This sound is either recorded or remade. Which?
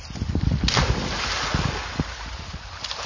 recorded